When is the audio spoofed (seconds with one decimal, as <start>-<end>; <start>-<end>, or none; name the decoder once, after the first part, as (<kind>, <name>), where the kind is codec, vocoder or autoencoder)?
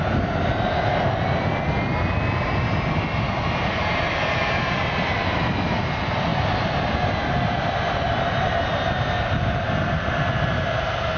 none